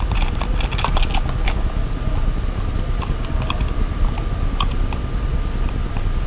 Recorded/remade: recorded